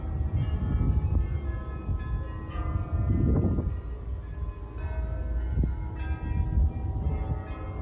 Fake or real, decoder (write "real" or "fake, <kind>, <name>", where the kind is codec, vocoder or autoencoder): real